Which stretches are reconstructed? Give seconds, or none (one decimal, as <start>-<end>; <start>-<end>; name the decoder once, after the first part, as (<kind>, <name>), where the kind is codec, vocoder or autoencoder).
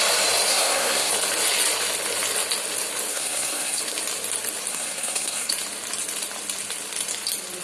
0.5-1.1 (codec, SNAC); 3.1-3.8; 4.7-5.5